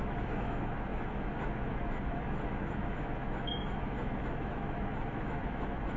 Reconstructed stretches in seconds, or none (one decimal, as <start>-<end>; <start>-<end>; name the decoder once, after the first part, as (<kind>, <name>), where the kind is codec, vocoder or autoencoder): 0.0-6.0 (autoencoder, DAC-VAE)